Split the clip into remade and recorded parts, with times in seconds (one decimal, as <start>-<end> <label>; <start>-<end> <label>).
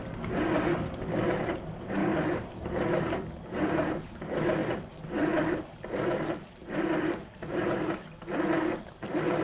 0.0-2.0 recorded; 2.0-3.9 remade; 3.9-4.6 recorded; 4.6-9.4 remade